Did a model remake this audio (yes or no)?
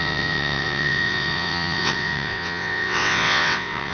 yes